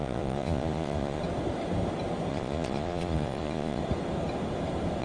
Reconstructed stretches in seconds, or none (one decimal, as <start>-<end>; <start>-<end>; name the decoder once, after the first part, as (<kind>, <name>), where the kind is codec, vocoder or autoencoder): 0.0-1.2 (vocoder, Vocos); 2.3-3.8